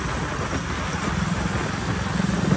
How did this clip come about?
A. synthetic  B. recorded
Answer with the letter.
B